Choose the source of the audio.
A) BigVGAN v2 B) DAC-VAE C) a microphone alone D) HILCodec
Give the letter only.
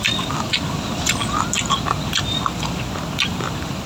C